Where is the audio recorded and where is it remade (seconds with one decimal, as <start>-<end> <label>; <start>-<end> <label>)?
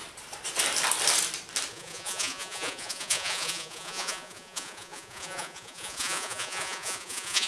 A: 0.0-1.7 recorded; 1.7-7.5 remade